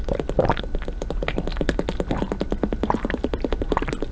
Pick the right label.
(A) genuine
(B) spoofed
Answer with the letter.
A